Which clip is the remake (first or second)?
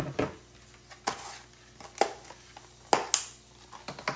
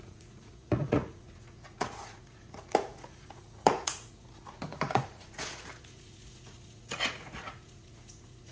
second